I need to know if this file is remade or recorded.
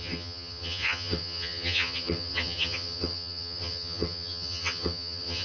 remade